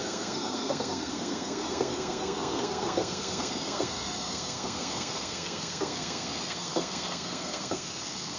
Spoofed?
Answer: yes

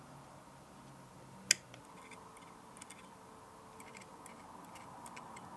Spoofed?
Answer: no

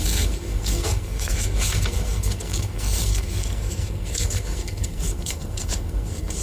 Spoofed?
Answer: yes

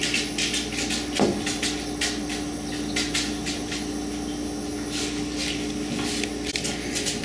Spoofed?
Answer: no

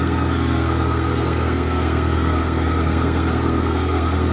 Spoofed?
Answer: yes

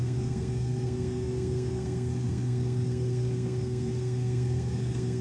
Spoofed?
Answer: yes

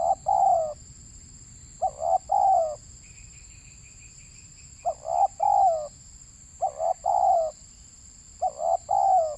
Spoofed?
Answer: no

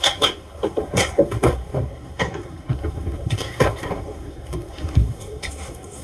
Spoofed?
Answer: yes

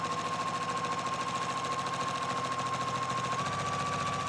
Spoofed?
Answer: no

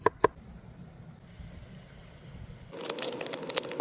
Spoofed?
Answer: no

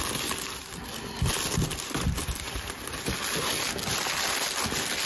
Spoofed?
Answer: no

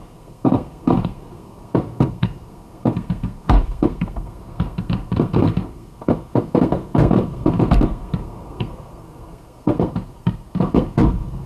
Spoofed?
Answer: yes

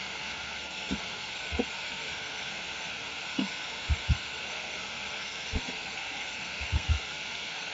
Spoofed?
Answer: yes